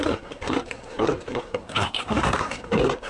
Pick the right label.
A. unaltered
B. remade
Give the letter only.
B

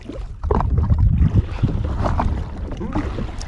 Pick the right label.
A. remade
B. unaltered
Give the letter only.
B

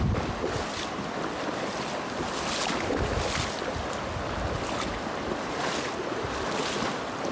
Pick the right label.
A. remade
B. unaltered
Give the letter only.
B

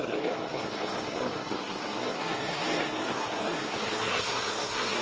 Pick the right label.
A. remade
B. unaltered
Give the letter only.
A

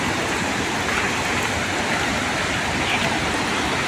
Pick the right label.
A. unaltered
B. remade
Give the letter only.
A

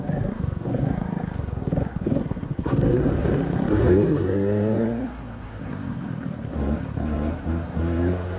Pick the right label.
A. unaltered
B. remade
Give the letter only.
B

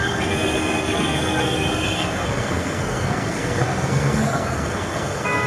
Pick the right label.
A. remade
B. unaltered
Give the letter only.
A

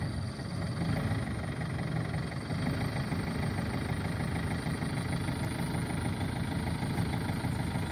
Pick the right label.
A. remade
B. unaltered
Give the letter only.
B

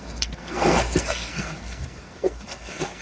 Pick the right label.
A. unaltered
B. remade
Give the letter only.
B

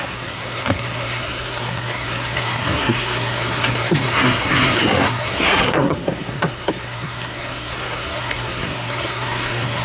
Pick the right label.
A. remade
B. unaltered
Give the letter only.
A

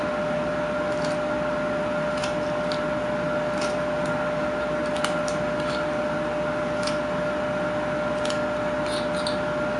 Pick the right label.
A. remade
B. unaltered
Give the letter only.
B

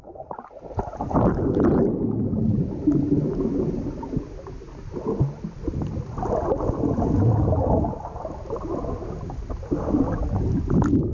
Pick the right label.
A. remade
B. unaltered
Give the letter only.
B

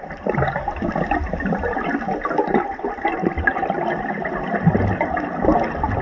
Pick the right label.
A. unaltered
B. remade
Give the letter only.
A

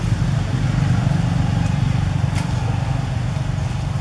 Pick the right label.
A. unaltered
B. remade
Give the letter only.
A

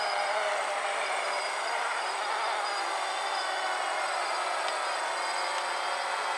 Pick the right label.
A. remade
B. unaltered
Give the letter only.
B